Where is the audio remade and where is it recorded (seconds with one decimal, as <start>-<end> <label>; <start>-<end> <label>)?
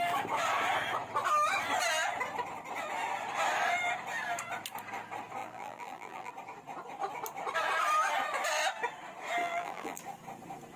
0.0-5.4 recorded; 5.4-6.3 remade; 6.3-9.4 recorded; 9.4-10.0 remade; 10.0-10.8 recorded